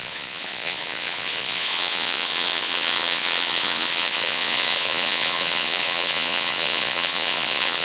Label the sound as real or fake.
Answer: fake